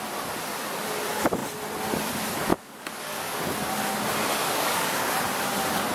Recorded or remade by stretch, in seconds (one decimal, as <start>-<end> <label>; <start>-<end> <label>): 0.0-2.5 recorded; 2.5-3.7 remade; 3.7-4.4 recorded; 4.4-5.1 remade; 5.1-5.9 recorded